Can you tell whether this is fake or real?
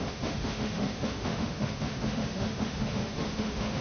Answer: fake